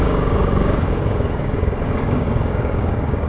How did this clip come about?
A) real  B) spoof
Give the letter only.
B